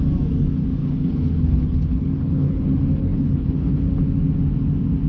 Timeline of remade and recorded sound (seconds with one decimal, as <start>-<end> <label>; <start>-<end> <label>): 0.0-0.8 recorded; 0.8-3.9 remade; 3.9-5.1 recorded